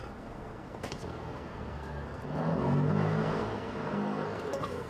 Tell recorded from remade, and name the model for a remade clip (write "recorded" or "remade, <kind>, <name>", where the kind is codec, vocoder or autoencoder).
remade, codec, SNAC